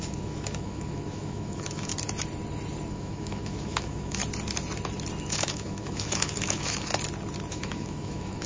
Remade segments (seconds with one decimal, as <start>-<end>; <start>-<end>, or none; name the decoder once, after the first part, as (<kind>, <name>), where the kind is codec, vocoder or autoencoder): 0.0-1.9 (autoencoder, DAC-VAE); 2.9-4.2; 5.2-6.9; 7.5-8.5